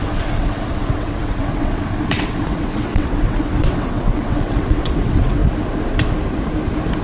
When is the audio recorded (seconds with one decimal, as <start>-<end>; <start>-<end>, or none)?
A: 5.4-7.0